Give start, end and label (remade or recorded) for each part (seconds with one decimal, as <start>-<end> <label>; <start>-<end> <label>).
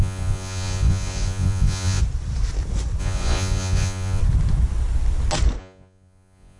0.0-2.0 remade; 2.0-3.0 recorded; 3.0-4.2 remade; 4.2-5.6 recorded; 5.6-6.6 remade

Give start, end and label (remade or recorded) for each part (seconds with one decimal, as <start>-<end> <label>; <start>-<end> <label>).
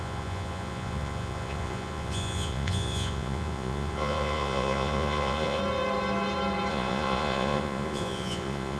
0.0-5.6 remade; 5.6-6.7 recorded; 6.7-8.8 remade